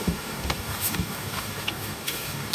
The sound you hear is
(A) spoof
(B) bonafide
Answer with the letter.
A